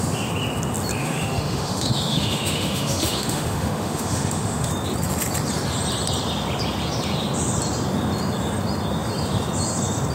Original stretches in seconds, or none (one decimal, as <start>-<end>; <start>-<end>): 0.0-1.0; 4.7-10.1